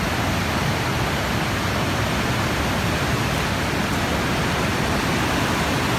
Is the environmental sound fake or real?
real